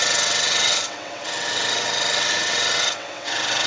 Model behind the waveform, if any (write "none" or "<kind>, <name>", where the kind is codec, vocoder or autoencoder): vocoder, WaveNeXt